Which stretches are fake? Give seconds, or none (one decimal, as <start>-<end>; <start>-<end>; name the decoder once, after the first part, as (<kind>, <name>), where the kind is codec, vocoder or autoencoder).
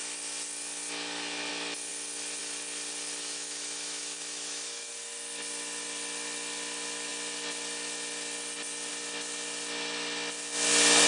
3.2-4.9 (autoencoder, DAC-VAE)